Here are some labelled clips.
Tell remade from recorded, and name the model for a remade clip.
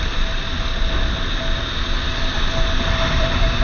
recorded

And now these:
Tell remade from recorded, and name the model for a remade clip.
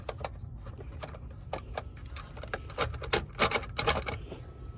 recorded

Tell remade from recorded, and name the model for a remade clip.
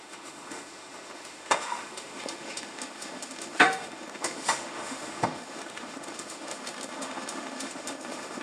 remade, autoencoder, DAC-VAE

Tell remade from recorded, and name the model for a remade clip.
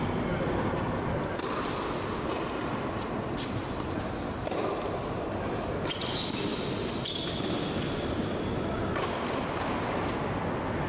recorded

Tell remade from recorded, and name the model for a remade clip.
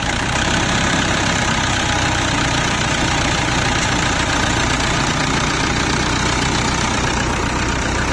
remade, vocoder, BigVGAN v2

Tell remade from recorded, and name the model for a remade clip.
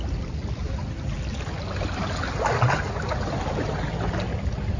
recorded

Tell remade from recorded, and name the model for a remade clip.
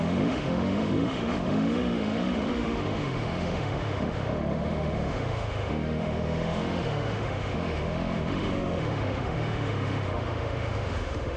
remade, autoencoder, DAC-VAE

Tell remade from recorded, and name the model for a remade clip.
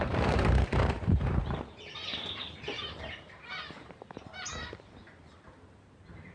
remade, vocoder, BigVGAN v2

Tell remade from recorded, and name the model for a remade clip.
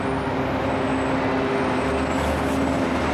recorded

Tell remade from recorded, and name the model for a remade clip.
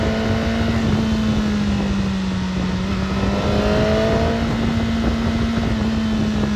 recorded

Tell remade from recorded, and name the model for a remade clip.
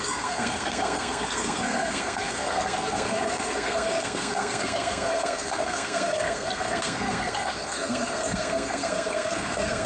remade, codec, SNAC